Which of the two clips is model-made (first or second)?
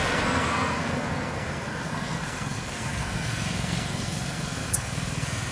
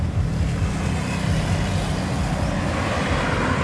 first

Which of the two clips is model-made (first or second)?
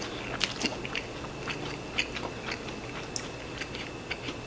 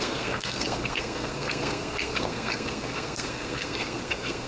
second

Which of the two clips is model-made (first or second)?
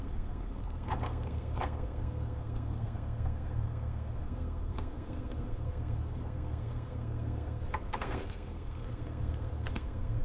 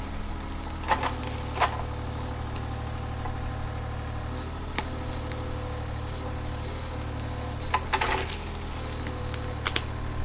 first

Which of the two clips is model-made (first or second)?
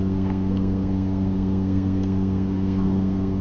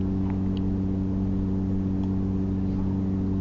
first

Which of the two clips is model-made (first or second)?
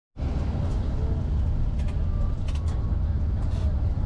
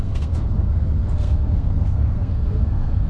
second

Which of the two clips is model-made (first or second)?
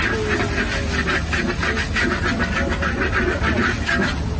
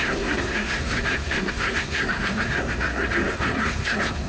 second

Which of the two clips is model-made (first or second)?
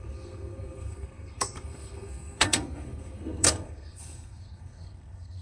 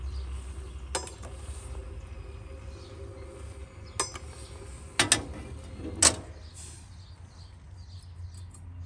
first